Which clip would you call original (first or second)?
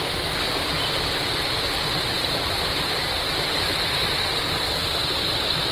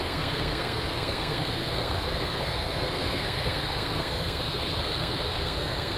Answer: first